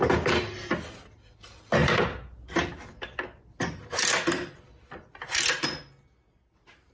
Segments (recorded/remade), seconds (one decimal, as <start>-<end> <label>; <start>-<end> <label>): 0.0-1.8 recorded; 1.8-5.2 remade; 5.2-6.9 recorded